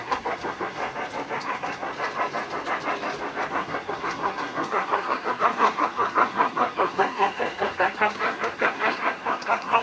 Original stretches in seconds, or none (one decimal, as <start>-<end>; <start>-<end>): 0.8-1.4; 1.9-3.5